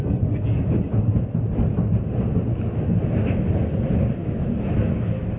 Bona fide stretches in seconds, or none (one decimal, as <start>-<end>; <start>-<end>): 0.0-2.5; 3.5-4.2